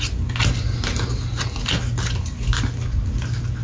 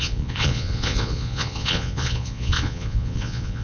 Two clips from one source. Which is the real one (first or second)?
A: first